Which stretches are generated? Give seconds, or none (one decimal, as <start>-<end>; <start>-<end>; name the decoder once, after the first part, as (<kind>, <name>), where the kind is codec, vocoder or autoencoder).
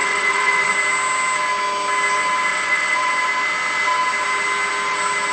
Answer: 0.0-0.7 (vocoder, Vocos); 2.5-3.1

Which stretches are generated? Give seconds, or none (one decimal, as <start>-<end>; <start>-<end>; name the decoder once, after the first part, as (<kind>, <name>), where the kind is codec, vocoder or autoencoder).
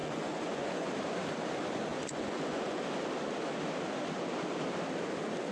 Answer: 0.0-0.9 (vocoder, Vocos); 1.9-2.8